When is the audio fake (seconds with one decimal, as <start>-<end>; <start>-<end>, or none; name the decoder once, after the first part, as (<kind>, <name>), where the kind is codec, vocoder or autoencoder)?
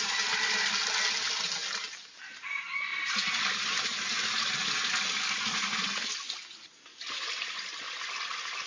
none